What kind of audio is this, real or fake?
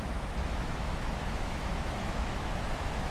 fake